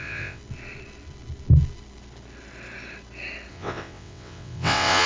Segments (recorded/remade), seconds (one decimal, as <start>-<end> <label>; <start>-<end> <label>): 0.0-0.4 remade; 0.4-3.5 recorded; 3.5-5.1 remade